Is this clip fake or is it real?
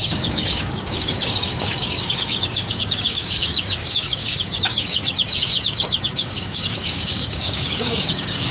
fake